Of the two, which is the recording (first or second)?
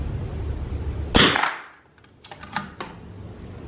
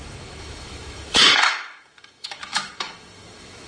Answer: first